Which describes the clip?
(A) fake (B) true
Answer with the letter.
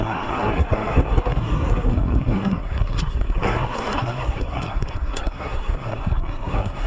A